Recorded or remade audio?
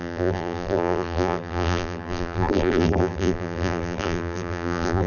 remade